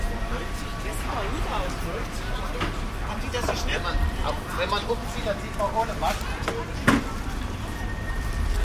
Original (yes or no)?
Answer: yes